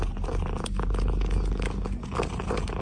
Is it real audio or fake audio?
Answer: real